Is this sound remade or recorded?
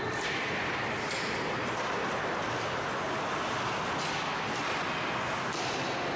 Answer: recorded